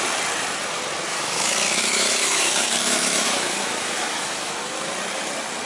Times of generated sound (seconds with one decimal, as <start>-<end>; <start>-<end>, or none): 1.1-4.5